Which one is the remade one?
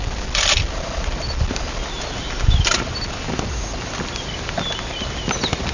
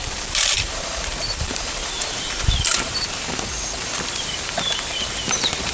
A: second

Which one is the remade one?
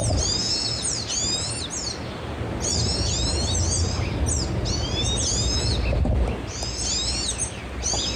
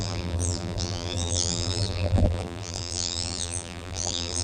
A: second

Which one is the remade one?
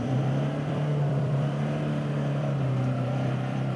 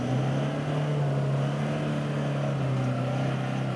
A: first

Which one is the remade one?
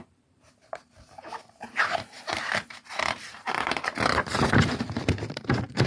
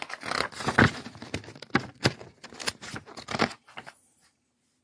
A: first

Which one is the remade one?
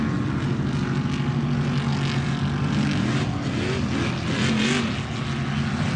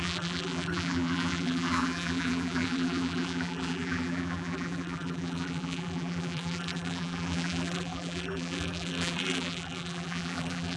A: second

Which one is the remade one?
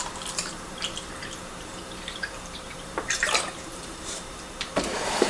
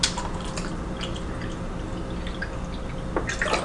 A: first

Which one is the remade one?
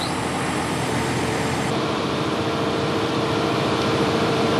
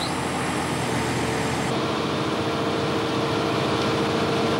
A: first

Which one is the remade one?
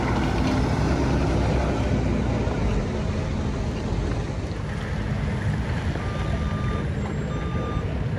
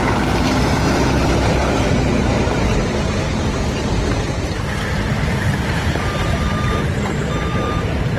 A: second